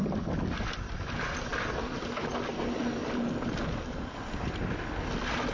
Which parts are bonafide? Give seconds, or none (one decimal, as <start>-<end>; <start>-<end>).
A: 0.0-5.5